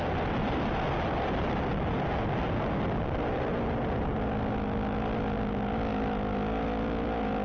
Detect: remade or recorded recorded